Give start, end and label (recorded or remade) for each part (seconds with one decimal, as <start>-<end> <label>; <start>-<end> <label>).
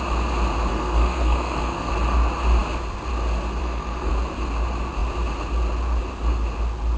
0.0-0.7 recorded; 0.7-1.9 remade; 1.9-3.6 recorded; 3.6-4.1 remade; 4.1-7.0 recorded